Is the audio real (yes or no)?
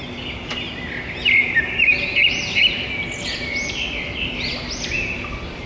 yes